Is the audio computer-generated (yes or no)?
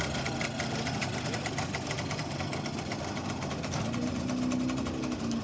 no